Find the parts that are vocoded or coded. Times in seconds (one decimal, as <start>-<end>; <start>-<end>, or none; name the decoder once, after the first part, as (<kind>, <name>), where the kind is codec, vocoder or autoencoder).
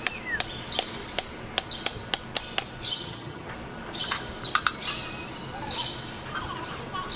2.9-3.5 (vocoder, HiFi-GAN)